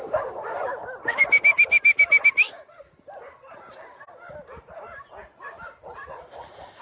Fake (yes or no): no